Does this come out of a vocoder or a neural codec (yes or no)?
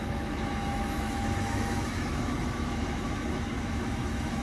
yes